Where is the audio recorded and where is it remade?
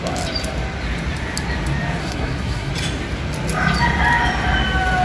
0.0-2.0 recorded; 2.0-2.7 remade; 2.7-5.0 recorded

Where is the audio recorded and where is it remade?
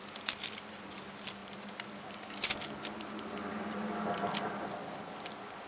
0.0-5.7 recorded